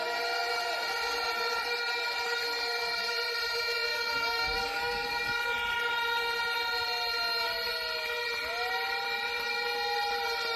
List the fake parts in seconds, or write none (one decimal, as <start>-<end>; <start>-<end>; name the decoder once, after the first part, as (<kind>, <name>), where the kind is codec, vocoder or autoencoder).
3.9-5.5 (codec, DAC)